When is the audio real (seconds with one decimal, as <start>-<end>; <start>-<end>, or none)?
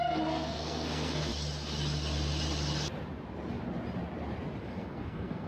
1.3-4.6